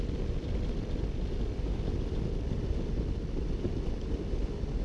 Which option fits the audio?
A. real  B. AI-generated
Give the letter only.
A